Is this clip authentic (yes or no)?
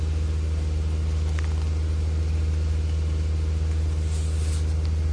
yes